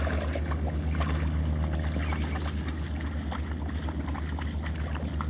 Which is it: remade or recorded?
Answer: recorded